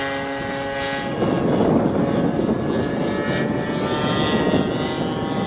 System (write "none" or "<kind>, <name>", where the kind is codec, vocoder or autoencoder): none